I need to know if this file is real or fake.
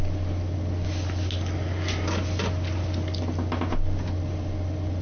real